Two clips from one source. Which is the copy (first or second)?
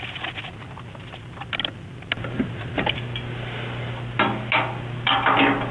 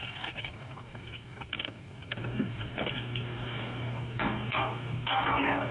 second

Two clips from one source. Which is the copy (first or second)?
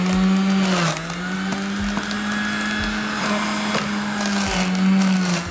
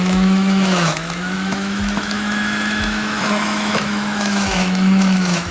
second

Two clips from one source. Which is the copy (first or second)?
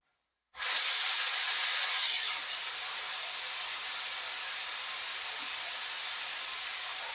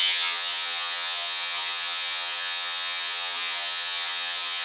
second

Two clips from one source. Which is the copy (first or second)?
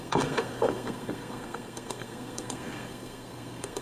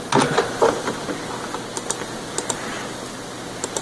first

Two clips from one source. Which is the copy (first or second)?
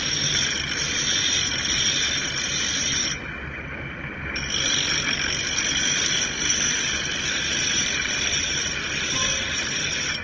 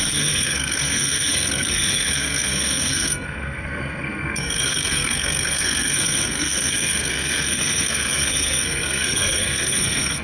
second